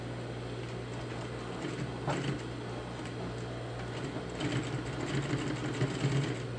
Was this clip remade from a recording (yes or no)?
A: no